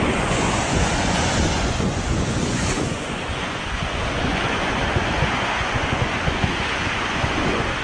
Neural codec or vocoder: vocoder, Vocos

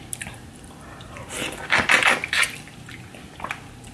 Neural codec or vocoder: none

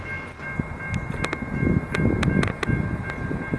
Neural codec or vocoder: none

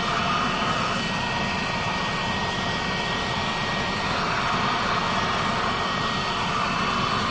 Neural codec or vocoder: vocoder, BigVGAN v2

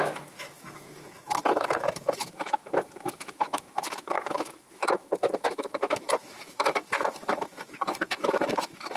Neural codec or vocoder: autoencoder, DAC-VAE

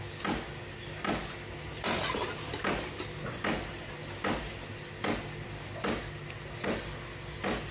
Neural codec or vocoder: none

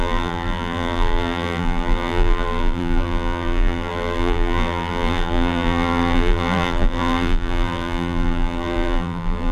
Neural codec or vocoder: vocoder, BigVGAN v2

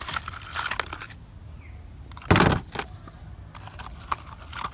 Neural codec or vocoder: none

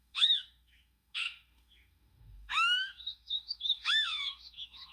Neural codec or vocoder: autoencoder, DAC-VAE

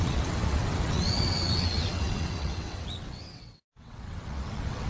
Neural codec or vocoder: vocoder, WaveNeXt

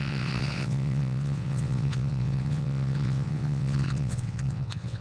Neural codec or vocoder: vocoder, WaveNeXt